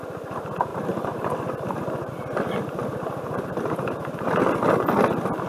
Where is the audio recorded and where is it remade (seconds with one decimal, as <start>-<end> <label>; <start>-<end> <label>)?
0.0-0.7 recorded; 0.7-2.1 remade; 2.1-2.9 recorded; 2.9-4.3 remade; 4.3-5.5 recorded